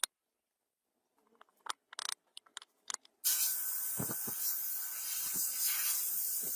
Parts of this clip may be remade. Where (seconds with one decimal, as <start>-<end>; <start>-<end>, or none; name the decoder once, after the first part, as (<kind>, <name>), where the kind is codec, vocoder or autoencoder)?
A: none